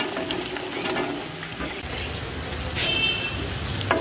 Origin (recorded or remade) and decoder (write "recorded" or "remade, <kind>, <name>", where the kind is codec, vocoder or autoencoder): recorded